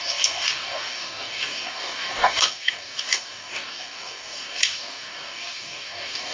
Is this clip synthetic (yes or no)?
yes